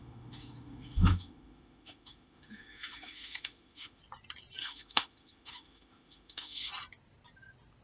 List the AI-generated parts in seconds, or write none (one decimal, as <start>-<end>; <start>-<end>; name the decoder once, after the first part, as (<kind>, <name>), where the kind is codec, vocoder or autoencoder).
0.0-4.0 (autoencoder, DAC-VAE); 4.6-6.7

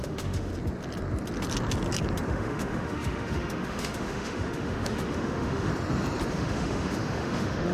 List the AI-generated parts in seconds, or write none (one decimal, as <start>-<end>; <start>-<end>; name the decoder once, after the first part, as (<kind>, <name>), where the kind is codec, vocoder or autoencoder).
0.0-0.5 (autoencoder, DAC-VAE); 2.3-5.7; 6.3-7.7

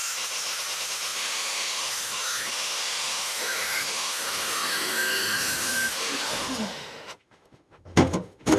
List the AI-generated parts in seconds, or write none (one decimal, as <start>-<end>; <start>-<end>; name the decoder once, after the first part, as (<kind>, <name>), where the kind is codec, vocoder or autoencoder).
0.0-8.6 (autoencoder, DAC-VAE)

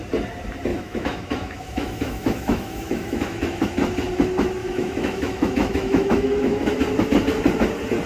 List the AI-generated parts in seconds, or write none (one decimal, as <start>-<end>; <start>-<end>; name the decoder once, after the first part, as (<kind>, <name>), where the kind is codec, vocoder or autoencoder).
0.7-3.6 (autoencoder, DAC-VAE); 4.6-6.7

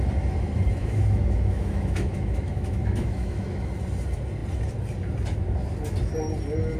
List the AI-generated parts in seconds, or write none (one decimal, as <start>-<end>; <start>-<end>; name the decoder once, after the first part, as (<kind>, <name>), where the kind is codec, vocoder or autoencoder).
0.8-3.7 (autoencoder, DAC-VAE)

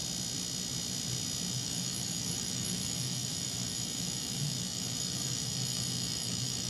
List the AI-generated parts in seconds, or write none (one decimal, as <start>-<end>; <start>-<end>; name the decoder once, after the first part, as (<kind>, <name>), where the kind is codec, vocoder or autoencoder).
1.5-6.7 (autoencoder, DAC-VAE)

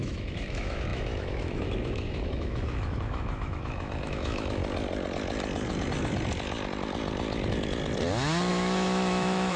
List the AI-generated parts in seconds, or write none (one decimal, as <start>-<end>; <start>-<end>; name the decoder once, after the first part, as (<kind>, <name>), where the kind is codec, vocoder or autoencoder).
0.0-4.6 (autoencoder, DAC-VAE); 8.5-9.6

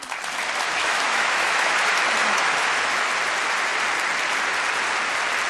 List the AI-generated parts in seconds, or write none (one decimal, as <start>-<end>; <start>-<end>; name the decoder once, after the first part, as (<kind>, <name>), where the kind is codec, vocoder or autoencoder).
0.8-1.8 (autoencoder, DAC-VAE); 2.2-3.1